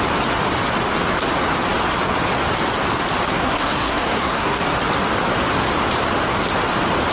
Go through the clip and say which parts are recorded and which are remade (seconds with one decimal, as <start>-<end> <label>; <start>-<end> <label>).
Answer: 0.0-3.3 recorded; 3.3-4.6 remade; 4.6-7.1 recorded